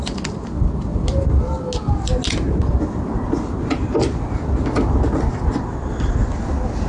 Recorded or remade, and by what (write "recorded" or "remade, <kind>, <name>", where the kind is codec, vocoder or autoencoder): recorded